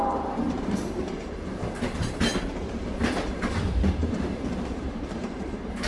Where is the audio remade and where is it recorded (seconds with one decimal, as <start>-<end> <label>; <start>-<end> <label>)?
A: 0.0-2.3 remade; 2.3-2.9 recorded; 2.9-5.9 remade

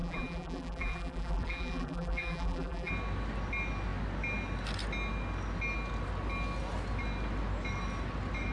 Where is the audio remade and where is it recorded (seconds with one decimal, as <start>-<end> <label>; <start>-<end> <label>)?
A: 0.0-2.9 remade; 2.9-8.5 recorded

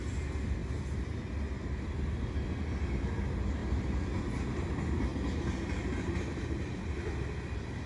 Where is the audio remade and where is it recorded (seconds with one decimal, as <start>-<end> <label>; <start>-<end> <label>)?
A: 0.0-0.6 recorded; 0.6-1.2 remade; 1.2-7.9 recorded